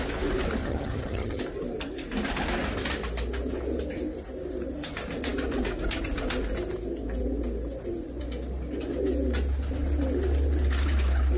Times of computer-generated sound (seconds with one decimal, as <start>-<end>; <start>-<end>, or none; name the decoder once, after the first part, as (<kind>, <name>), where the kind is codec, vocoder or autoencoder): 0.6-1.4 (vocoder, HiFi-GAN)